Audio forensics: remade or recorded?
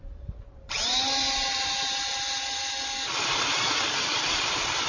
recorded